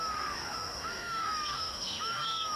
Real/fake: fake